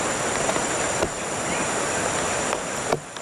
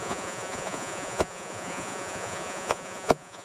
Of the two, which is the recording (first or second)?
first